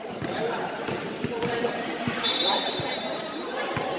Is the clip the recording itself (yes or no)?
no